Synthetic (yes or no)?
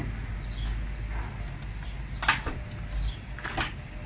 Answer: no